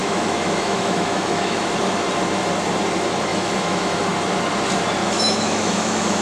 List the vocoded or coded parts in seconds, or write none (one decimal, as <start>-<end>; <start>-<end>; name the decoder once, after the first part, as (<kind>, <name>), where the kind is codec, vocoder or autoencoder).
0.0-1.6 (autoencoder, DAC-VAE); 3.3-4.0; 5.0-6.2